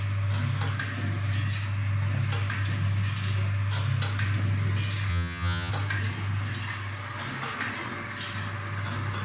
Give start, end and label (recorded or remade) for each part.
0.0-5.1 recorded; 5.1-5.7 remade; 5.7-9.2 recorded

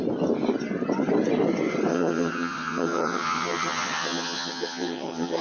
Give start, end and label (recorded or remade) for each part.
0.0-1.9 recorded; 1.9-5.4 remade

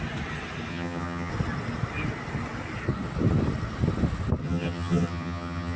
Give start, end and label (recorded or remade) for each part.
0.0-0.7 recorded; 0.7-1.3 remade; 1.3-4.4 recorded; 4.4-5.8 remade

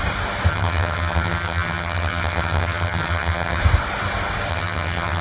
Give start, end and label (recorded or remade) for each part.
0.0-0.5 recorded; 0.5-3.6 remade; 3.6-4.5 recorded; 4.5-5.2 remade

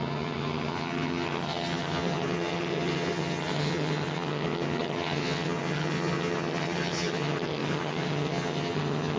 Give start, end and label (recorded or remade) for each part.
0.0-9.2 remade

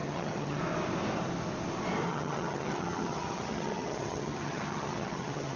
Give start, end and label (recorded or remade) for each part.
0.0-0.6 remade; 0.6-2.1 recorded; 2.1-5.6 remade

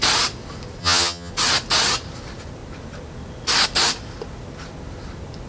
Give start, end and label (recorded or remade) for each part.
0.0-0.8 recorded; 0.8-1.3 remade; 1.3-5.5 recorded